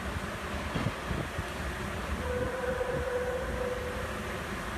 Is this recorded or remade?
recorded